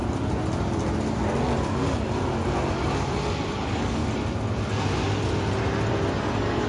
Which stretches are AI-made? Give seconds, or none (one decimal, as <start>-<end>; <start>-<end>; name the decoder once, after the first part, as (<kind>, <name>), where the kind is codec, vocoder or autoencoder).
3.5-4.0 (codec, DAC); 6.1-6.7